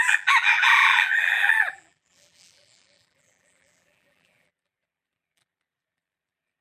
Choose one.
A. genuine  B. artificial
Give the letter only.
B